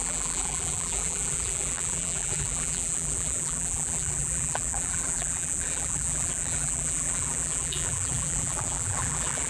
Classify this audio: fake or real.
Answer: fake